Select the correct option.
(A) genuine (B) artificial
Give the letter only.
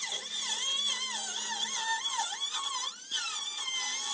A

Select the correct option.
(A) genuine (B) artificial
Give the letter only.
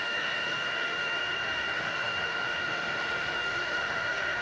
B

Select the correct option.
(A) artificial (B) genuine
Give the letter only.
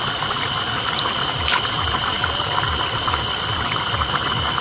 B